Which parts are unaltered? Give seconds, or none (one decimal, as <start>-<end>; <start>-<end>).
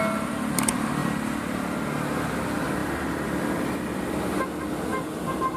0.0-2.8; 4.2-4.9